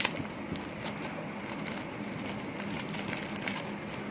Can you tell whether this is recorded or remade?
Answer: recorded